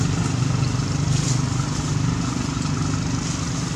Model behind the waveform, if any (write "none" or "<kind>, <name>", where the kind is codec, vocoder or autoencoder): none